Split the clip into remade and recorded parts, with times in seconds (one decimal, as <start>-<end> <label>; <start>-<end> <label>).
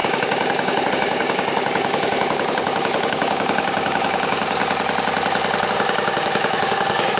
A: 0.0-4.6 remade; 4.6-5.7 recorded; 5.7-7.2 remade